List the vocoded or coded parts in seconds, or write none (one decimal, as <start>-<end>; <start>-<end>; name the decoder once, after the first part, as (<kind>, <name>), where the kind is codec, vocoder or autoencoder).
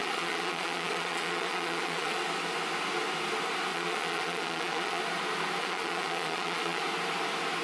0.0-2.2 (vocoder, Vocos); 3.7-5.0; 5.6-6.8